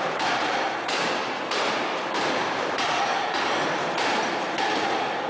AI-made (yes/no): yes